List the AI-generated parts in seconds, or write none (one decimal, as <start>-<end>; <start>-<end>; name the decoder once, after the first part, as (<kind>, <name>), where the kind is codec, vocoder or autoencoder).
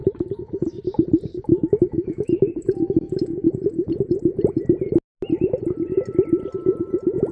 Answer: 0.0-0.8 (autoencoder, DAC-VAE); 1.3-3.5